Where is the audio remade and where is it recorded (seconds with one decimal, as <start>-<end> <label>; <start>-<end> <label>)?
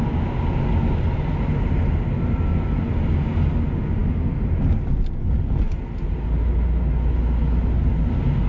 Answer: 0.0-8.5 recorded